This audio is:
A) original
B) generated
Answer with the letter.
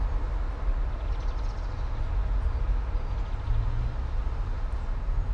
A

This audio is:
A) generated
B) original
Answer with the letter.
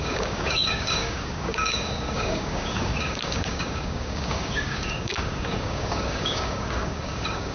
A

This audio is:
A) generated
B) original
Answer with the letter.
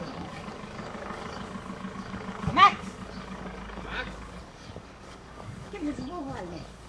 A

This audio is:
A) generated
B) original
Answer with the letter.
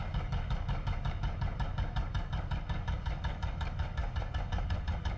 A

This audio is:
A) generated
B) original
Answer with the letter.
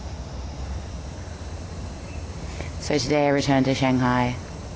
B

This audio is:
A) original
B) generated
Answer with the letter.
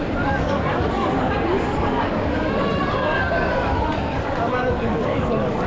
B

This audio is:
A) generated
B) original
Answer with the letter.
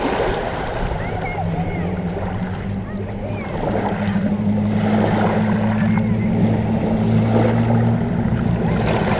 B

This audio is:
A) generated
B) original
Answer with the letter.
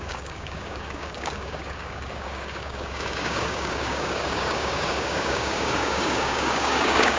A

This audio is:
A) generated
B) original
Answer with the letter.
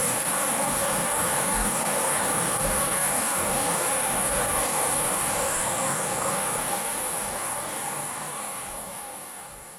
A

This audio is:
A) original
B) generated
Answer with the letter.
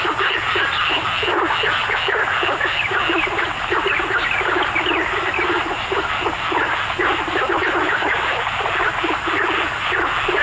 A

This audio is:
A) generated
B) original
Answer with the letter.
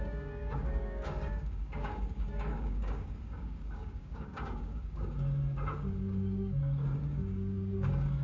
A